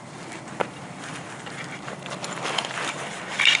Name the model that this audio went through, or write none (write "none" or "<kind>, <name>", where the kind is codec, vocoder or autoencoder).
vocoder, BigVGAN v2